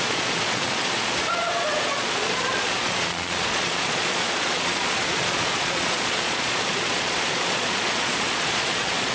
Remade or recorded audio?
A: remade